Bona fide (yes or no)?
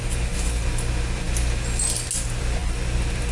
yes